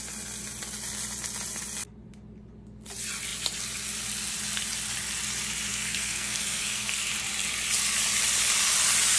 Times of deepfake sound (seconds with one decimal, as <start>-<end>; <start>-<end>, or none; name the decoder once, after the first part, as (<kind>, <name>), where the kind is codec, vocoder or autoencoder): 5.7-7.1 (codec, SNAC)